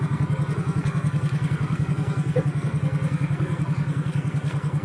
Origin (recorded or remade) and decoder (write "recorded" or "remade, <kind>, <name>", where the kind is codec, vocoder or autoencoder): remade, codec, SNAC